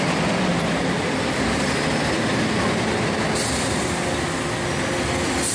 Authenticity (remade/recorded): recorded